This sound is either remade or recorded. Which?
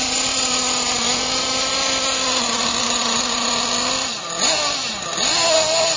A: recorded